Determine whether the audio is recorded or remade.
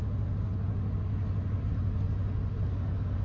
recorded